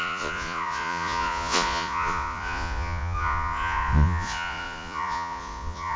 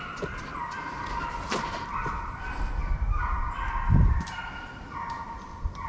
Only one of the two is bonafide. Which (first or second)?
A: second